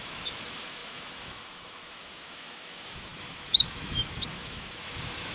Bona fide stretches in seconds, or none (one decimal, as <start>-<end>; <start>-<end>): none